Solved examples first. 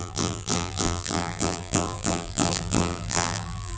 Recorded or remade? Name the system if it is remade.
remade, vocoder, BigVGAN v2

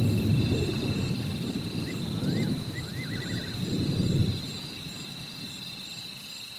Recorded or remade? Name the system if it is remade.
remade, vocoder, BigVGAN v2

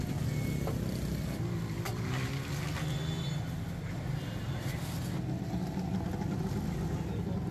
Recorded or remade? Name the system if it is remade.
recorded